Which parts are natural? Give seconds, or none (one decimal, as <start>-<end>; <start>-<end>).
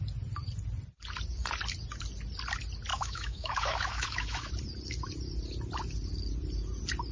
0.0-2.9; 4.5-7.1